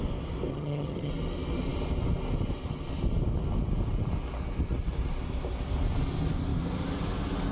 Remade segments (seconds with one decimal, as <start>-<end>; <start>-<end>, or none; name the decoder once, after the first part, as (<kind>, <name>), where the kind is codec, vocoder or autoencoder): 0.5-1.1 (vocoder, HiFi-GAN)